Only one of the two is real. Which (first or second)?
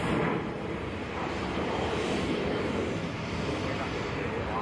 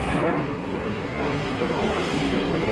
first